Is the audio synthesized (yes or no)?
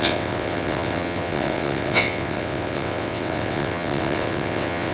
yes